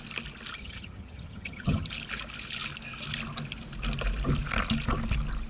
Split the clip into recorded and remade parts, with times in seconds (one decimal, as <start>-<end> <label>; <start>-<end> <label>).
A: 0.0-0.6 recorded; 0.6-1.9 remade; 1.9-5.5 recorded